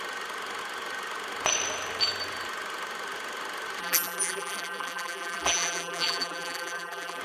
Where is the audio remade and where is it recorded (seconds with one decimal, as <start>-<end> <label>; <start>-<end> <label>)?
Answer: 0.0-3.8 recorded; 3.8-7.2 remade